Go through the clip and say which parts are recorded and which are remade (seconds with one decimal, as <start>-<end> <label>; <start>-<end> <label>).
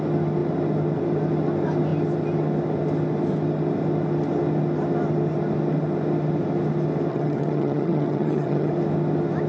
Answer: 0.0-7.1 recorded; 7.1-8.7 remade; 8.7-9.5 recorded